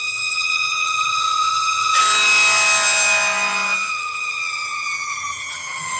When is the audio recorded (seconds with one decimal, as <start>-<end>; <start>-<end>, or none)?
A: 2.0-3.9